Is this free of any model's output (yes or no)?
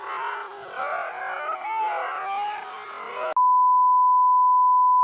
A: yes